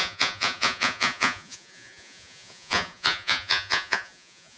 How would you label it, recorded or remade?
remade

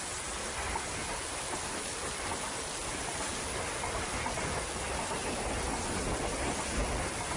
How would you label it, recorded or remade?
recorded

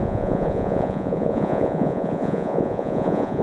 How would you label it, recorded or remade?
remade